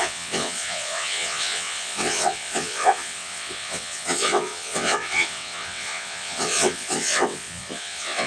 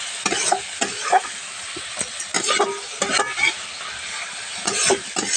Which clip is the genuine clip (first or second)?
second